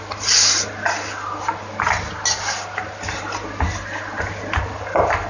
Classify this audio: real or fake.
real